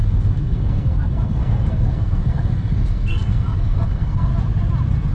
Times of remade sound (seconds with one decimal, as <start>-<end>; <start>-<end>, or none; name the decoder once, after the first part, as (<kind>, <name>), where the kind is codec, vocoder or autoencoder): 0.0-4.3 (codec, SNAC)